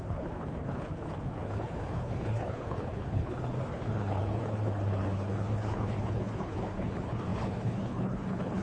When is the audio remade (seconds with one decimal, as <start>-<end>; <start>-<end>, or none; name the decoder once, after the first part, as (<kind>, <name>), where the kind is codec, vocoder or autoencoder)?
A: 0.0-8.6 (codec, HILCodec)